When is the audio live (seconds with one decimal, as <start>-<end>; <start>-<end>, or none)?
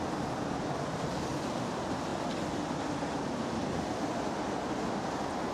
2.1-3.1